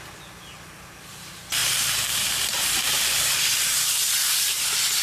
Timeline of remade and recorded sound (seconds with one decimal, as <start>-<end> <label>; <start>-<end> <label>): 0.0-1.6 recorded; 1.6-4.6 remade; 4.6-5.0 recorded